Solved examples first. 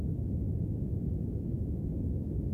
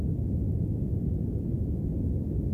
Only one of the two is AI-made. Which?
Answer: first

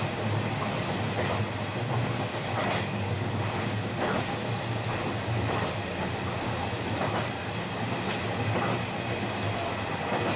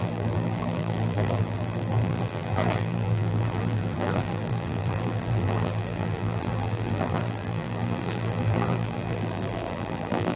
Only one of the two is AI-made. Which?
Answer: second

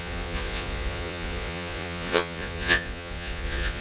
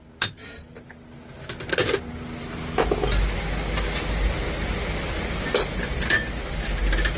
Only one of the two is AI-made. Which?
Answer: first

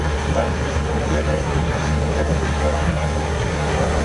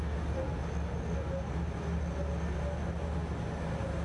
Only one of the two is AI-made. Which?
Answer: first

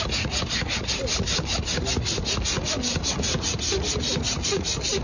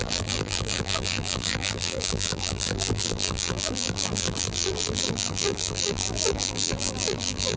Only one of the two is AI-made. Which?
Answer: second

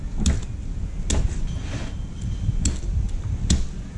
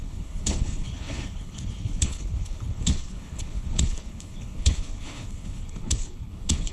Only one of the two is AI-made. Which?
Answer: second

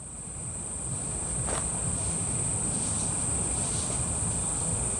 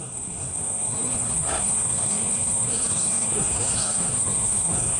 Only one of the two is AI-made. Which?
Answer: second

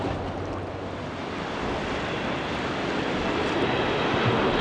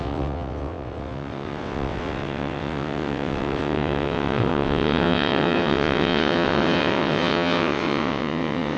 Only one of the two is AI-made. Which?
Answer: second